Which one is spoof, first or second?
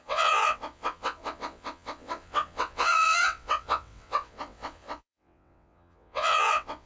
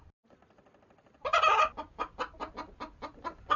first